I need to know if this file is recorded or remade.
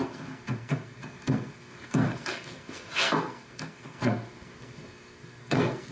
remade